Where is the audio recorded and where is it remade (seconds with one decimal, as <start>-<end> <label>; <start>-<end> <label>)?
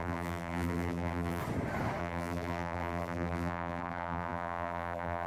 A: 0.0-1.4 remade; 1.4-2.0 recorded; 2.0-5.3 remade